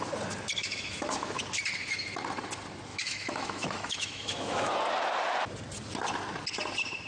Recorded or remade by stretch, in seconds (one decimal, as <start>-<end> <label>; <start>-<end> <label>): 0.0-0.6 recorded; 0.6-1.4 remade; 1.4-2.9 recorded; 2.9-4.7 remade; 4.7-7.1 recorded